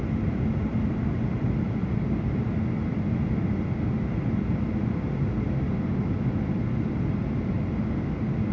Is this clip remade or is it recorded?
recorded